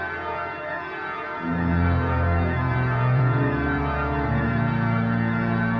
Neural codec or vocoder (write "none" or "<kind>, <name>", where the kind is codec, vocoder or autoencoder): vocoder, Vocos